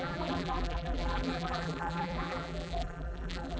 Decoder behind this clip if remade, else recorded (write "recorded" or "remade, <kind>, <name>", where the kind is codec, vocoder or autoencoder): remade, vocoder, BigVGAN v2